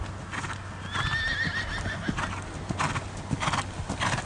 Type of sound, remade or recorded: recorded